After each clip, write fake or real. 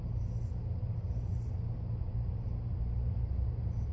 real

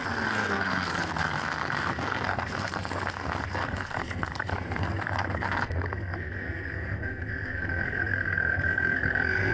fake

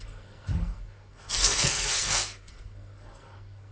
fake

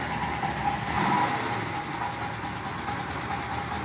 real